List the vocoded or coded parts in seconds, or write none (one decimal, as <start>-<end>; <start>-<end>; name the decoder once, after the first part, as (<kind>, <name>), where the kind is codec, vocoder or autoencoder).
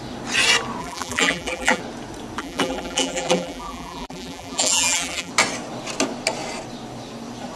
0.8-1.8 (vocoder, BigVGAN v2); 2.4-5.3